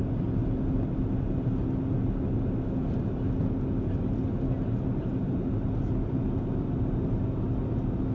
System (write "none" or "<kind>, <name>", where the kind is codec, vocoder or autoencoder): none